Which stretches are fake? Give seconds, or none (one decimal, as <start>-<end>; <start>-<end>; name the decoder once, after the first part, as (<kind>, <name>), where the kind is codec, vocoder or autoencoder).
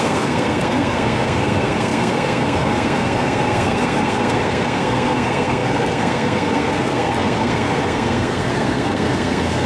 0.0-9.7 (codec, SNAC)